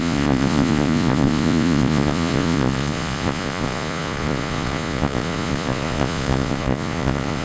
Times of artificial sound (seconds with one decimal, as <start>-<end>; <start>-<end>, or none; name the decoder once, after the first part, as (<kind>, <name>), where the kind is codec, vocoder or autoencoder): 0.0-7.4 (vocoder, Vocos)